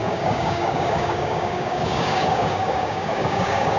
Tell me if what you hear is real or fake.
fake